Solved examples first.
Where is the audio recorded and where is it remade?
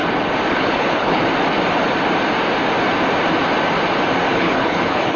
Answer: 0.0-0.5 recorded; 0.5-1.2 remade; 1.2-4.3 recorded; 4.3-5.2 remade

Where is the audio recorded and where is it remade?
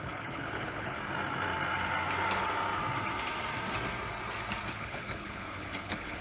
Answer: 0.0-1.0 remade; 1.0-4.7 recorded; 4.7-6.2 remade